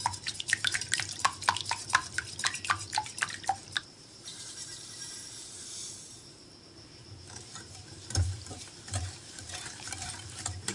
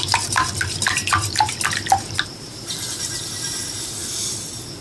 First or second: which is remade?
first